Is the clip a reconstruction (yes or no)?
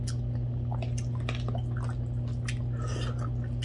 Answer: no